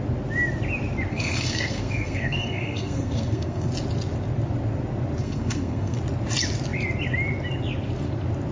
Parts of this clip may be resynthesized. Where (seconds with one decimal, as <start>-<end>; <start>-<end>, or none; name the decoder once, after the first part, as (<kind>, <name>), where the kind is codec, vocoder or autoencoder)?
1.1-3.7 (codec, SNAC); 5.2-6.0